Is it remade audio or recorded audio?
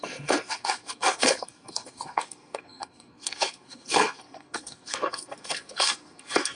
remade